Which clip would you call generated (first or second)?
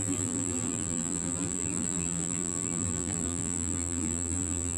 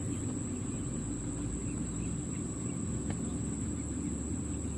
first